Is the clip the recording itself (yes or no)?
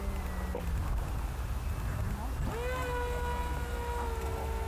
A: yes